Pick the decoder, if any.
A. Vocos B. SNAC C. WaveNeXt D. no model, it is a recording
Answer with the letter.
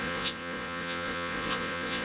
A